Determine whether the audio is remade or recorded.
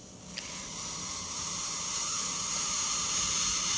recorded